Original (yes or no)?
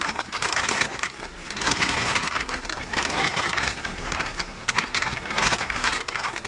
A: no